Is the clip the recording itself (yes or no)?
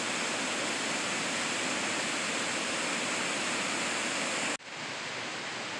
yes